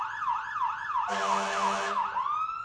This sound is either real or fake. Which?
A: real